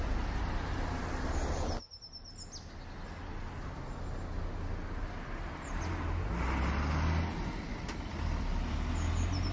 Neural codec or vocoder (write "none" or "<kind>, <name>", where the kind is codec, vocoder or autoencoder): none